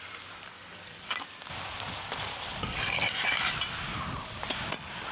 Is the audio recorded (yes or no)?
yes